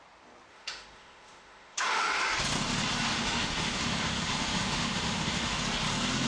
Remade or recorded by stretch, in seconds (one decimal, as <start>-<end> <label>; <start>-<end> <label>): 0.0-0.5 recorded; 0.5-2.1 remade; 2.1-3.1 recorded; 3.1-5.6 remade; 5.6-6.3 recorded